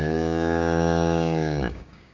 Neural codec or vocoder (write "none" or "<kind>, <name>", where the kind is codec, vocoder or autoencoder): codec, DAC